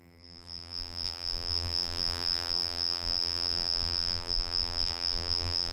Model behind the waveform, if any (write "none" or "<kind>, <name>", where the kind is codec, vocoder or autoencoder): vocoder, BigVGAN v2